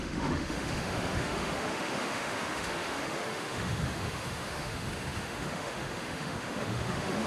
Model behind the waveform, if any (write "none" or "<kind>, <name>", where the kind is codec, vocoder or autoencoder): autoencoder, DAC-VAE